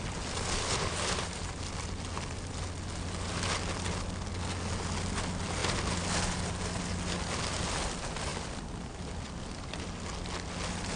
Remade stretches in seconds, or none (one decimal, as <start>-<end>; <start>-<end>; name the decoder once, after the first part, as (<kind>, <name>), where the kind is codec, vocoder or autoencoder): none